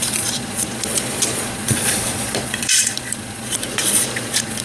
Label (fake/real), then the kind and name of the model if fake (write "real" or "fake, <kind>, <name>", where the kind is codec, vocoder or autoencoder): fake, vocoder, Vocos